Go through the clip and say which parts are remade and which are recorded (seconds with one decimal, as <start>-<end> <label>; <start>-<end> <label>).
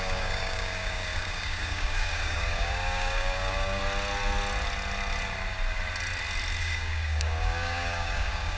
0.0-3.8 remade; 3.8-6.6 recorded; 6.6-8.6 remade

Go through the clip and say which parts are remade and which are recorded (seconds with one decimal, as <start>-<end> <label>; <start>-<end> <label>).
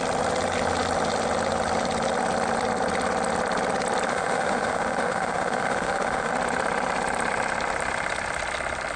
0.0-4.1 recorded; 4.1-6.3 remade; 6.3-9.0 recorded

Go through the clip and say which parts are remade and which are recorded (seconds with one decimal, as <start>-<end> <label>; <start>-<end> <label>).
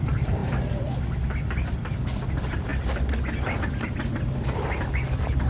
0.0-0.4 remade; 0.4-2.3 recorded; 2.3-2.7 remade; 2.7-5.5 recorded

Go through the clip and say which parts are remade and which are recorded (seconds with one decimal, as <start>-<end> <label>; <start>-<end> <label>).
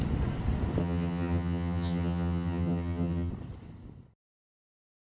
0.0-0.8 recorded; 0.8-3.3 remade; 3.3-5.1 recorded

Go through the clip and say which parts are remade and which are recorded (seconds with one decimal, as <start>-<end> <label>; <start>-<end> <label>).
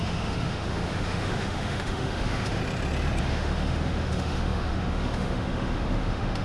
0.0-2.6 remade; 2.6-3.2 recorded; 3.2-6.4 remade